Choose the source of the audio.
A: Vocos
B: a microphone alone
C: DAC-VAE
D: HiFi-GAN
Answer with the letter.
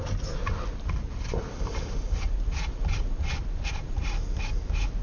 B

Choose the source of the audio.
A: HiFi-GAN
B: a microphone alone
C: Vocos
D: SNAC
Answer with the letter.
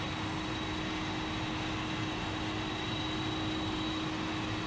B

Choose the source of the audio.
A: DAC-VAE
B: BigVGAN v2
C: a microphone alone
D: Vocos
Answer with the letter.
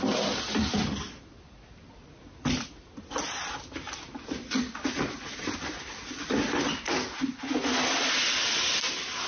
C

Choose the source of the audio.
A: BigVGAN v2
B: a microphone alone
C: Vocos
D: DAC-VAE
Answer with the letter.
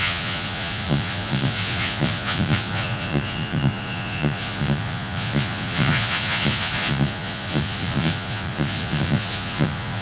C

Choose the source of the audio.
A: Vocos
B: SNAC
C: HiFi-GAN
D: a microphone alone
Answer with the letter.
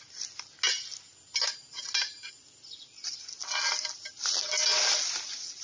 D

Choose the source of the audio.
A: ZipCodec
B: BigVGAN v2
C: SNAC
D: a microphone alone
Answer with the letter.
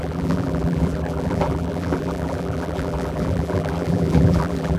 B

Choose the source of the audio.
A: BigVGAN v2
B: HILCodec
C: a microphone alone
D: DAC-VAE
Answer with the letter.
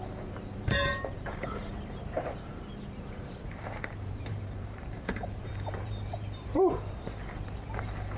A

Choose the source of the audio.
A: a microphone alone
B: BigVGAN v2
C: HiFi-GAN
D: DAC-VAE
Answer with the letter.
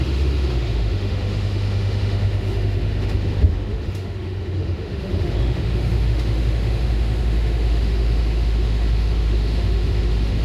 D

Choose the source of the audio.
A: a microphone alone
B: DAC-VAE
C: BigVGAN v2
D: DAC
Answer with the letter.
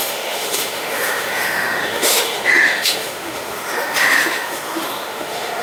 B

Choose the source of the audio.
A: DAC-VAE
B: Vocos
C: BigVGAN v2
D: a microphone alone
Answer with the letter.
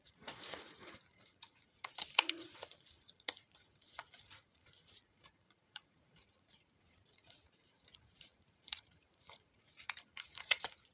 B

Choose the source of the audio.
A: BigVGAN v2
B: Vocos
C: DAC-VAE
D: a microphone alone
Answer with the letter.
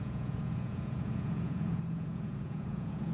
B